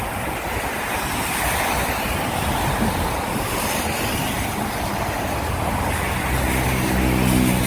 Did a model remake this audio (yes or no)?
no